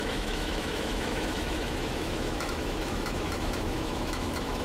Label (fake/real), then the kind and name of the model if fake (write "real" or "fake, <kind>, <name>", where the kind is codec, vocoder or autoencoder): fake, autoencoder, DAC-VAE